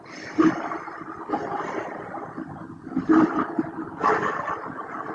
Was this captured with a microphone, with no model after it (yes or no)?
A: yes